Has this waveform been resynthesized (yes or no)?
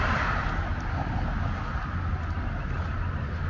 no